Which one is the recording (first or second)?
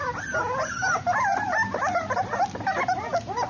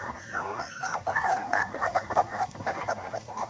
first